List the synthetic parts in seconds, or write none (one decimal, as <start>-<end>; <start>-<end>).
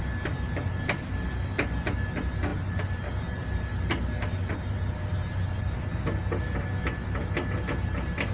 none